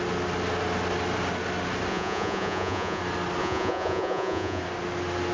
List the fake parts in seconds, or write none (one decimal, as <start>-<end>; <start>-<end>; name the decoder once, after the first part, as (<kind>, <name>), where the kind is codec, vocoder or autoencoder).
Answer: 1.9-3.0 (vocoder, Vocos); 3.4-4.6